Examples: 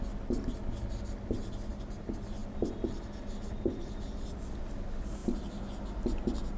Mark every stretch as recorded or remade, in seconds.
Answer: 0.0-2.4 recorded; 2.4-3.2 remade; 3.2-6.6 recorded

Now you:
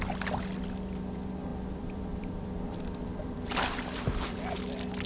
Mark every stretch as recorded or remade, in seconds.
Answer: 0.0-1.5 recorded; 1.5-4.6 remade; 4.6-5.1 recorded